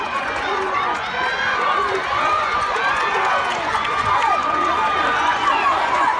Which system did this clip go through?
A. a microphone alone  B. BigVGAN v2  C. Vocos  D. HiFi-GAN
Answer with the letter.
C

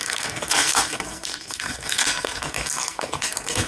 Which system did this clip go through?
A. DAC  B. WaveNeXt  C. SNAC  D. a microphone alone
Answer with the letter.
C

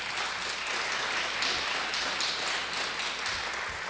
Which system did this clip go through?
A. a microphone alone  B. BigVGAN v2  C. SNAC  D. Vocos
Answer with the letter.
A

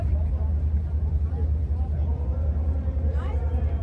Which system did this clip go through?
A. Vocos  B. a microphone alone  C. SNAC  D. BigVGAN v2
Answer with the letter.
B